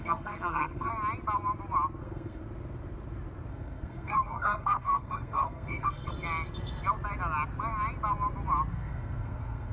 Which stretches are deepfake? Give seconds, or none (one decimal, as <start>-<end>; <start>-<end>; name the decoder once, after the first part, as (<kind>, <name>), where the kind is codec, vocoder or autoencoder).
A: 0.0-0.9 (codec, SNAC); 2.0-2.4; 3.5-6.1; 8.7-9.7